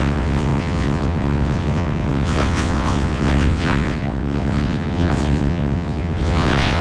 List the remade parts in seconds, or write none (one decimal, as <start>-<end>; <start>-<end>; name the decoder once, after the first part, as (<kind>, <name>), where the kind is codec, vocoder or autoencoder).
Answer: 0.0-6.8 (vocoder, WaveNeXt)